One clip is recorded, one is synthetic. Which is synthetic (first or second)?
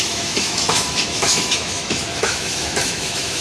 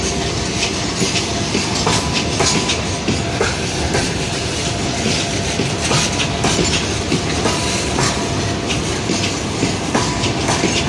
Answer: first